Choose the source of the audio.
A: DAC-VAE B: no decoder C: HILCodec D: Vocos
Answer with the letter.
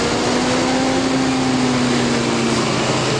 B